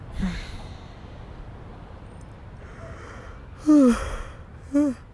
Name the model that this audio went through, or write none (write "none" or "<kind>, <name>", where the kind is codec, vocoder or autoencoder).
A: none